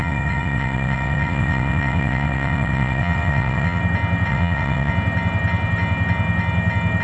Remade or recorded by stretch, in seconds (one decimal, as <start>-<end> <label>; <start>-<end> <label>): 0.0-3.8 remade; 3.8-4.3 recorded; 4.3-4.9 remade; 4.9-7.0 recorded